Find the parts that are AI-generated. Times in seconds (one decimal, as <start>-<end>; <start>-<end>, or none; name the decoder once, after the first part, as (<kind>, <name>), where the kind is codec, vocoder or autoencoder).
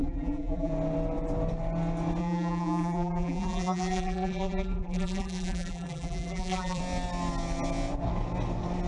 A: 0.0-0.7 (vocoder, BigVGAN v2); 2.2-6.8